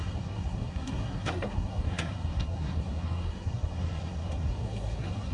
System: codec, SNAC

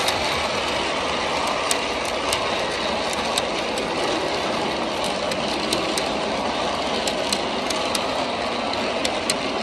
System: none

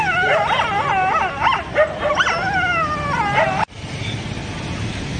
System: none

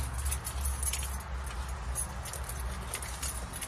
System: none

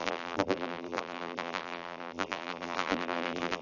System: vocoder, BigVGAN v2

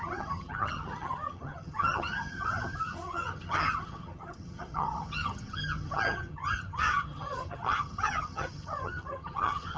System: vocoder, HiFi-GAN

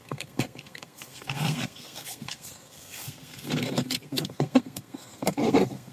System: codec, SNAC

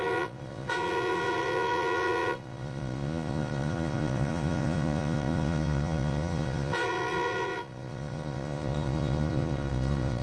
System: vocoder, Vocos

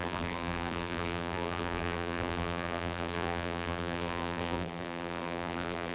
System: vocoder, BigVGAN v2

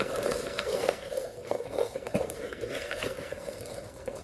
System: codec, SNAC